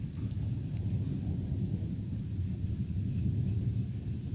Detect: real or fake real